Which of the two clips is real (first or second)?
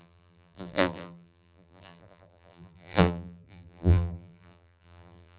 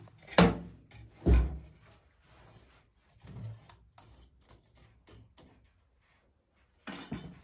second